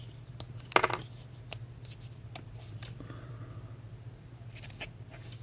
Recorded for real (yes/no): yes